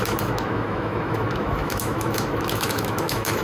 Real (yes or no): no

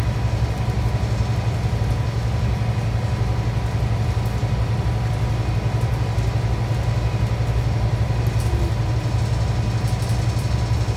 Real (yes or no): yes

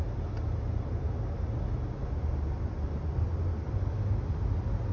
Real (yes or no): yes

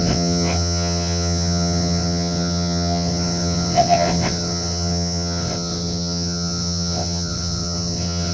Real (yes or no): no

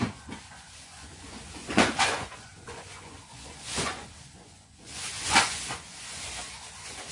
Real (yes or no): no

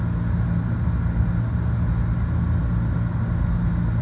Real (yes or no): yes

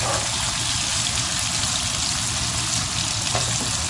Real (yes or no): yes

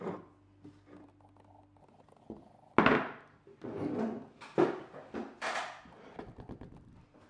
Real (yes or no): yes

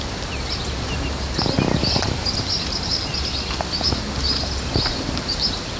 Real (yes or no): yes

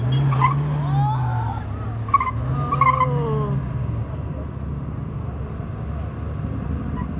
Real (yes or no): yes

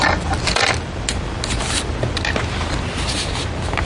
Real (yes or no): yes